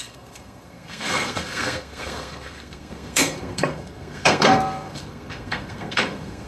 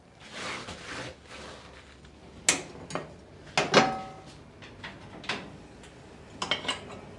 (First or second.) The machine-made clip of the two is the first